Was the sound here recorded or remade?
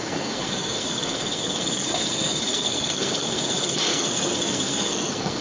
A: remade